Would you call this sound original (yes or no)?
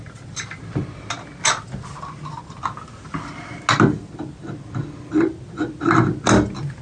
yes